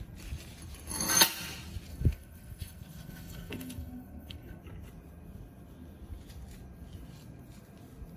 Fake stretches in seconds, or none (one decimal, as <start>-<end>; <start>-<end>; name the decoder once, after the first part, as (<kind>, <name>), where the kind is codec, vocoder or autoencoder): 1.9-4.6 (codec, SNAC)